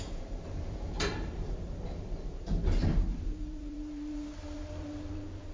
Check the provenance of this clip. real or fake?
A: fake